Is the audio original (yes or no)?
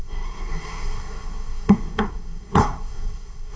no